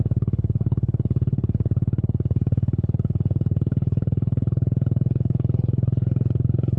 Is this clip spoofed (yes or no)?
yes